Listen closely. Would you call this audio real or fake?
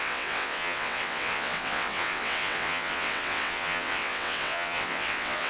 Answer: fake